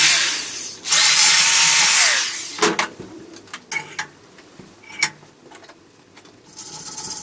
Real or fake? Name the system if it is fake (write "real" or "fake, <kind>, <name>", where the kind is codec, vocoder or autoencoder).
real